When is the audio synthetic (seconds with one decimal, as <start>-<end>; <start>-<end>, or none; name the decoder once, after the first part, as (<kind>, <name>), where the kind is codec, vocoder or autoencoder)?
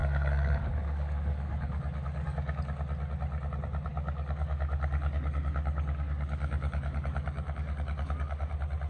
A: 0.0-2.6 (codec, DAC); 3.9-8.5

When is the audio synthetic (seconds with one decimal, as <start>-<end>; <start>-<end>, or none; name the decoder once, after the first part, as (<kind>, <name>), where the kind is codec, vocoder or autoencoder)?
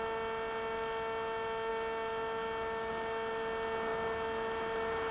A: none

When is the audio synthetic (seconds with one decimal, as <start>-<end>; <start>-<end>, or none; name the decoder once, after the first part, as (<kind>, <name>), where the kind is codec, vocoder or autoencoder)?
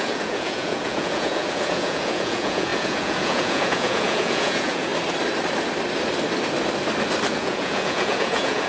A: 0.0-4.9 (vocoder, Vocos); 7.3-8.7